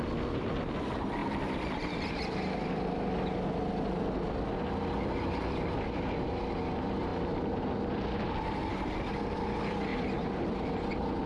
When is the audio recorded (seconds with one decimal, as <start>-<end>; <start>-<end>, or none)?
0.0-11.3